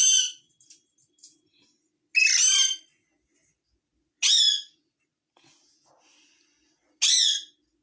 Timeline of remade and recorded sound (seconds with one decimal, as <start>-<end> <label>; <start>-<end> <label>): 0.0-7.8 recorded